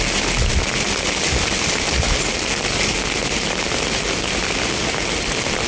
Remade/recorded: recorded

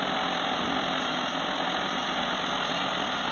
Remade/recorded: recorded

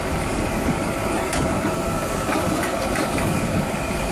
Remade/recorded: remade